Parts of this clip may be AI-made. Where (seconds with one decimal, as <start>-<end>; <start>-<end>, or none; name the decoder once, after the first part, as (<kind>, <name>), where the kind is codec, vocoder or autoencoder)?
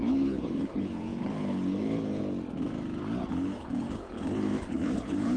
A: 0.0-2.2 (codec, HILCodec); 3.3-5.4